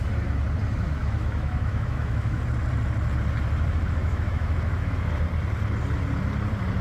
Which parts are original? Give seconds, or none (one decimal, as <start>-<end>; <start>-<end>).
0.0-1.0; 2.4-4.0; 5.1-6.8